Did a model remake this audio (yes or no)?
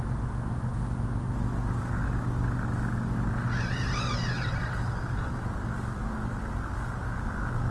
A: no